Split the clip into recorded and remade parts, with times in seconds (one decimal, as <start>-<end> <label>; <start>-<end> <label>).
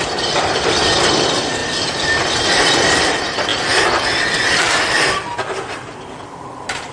0.0-1.6 recorded; 1.6-2.2 remade; 2.2-3.5 recorded; 3.5-6.9 remade